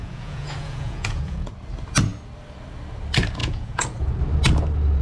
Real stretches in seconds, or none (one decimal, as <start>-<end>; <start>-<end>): 1.5-3.4; 4.2-5.0